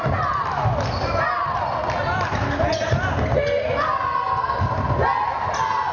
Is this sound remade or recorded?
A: recorded